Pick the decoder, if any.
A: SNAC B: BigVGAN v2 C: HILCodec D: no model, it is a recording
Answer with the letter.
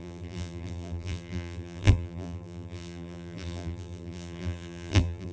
B